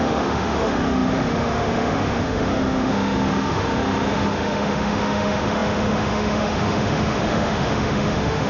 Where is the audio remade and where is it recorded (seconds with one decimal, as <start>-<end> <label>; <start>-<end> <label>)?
0.0-8.5 remade